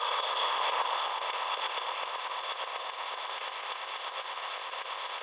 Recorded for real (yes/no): no